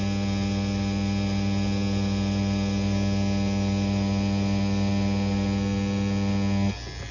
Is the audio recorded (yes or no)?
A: yes